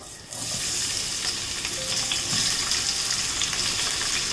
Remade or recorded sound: recorded